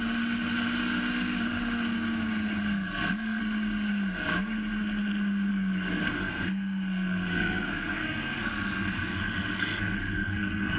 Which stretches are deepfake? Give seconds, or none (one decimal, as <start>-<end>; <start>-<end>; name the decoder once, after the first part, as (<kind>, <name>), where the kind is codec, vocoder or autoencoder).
2.6-3.4 (codec, SNAC); 5.5-10.8